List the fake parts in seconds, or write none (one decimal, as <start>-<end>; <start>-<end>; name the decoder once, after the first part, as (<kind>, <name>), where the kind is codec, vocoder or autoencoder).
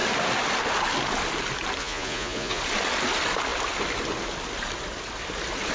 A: 1.8-2.6 (vocoder, Vocos)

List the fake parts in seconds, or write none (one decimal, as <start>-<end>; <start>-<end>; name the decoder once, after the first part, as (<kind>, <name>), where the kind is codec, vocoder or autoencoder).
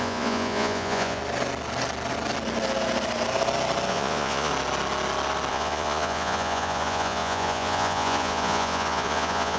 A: 0.0-1.2 (vocoder, Vocos); 3.9-4.5; 5.5-9.6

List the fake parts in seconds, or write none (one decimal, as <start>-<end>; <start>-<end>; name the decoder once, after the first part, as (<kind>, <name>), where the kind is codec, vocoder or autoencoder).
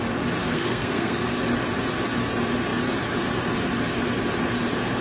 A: 0.4-1.3 (codec, SNAC)